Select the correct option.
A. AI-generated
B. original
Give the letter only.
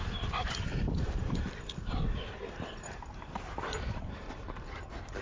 B